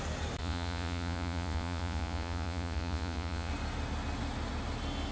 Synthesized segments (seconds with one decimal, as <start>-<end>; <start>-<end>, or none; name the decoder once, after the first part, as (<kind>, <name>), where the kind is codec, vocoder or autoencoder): 0.4-3.5 (vocoder, Vocos)